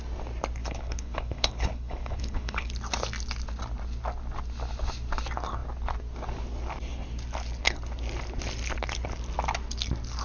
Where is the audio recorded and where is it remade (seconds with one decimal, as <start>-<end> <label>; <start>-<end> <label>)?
0.0-0.6 recorded; 0.6-2.7 remade; 2.7-10.2 recorded